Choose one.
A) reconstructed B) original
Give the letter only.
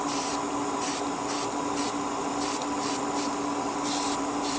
B